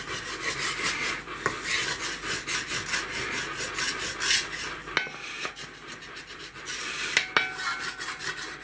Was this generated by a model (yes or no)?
no